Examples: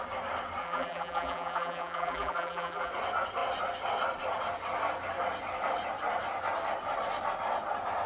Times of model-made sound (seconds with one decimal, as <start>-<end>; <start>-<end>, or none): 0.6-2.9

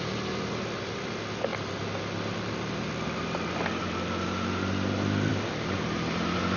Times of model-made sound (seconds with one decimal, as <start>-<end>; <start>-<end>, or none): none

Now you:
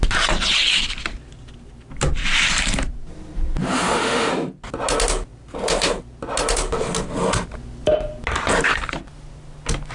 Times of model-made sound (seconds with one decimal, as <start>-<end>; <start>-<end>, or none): 3.6-4.3